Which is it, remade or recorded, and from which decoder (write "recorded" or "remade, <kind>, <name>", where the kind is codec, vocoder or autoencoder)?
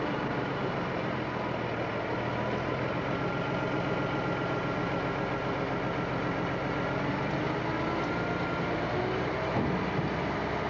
recorded